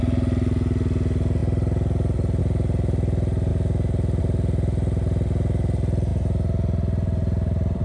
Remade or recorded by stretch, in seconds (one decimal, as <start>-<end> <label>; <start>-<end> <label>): 0.0-6.1 recorded; 6.1-7.8 remade